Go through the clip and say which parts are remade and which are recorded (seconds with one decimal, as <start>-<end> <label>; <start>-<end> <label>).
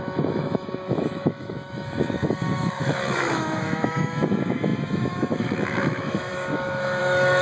0.0-7.4 remade